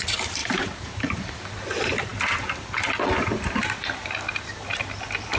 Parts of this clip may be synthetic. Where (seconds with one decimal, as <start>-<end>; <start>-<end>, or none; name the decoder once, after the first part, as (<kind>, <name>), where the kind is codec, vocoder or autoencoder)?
0.4-0.9 (vocoder, BigVGAN v2)